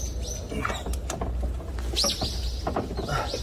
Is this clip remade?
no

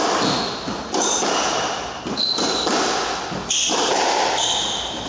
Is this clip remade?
no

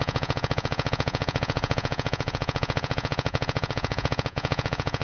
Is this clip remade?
yes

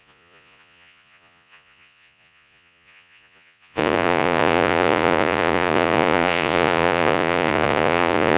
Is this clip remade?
yes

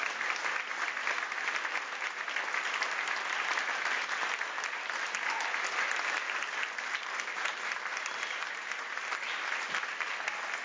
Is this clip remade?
no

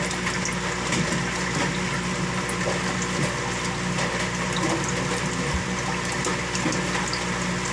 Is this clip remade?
no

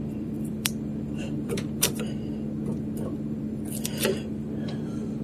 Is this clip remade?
yes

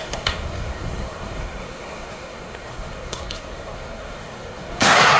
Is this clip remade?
yes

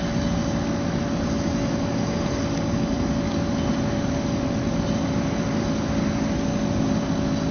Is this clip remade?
no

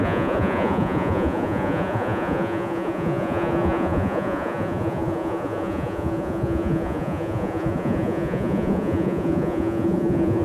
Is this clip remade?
yes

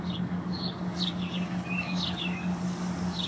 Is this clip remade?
yes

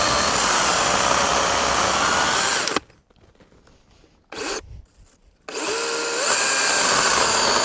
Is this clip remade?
no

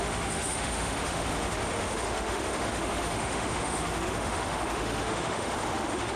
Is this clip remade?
yes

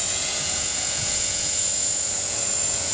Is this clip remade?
yes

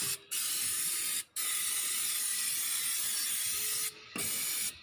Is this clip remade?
no